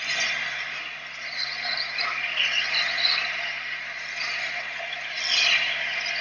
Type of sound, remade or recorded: recorded